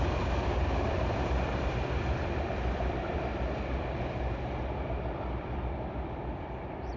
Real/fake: fake